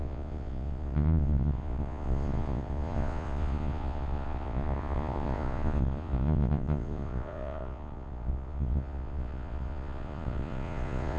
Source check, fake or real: fake